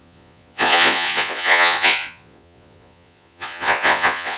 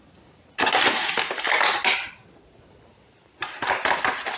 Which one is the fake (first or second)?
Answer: first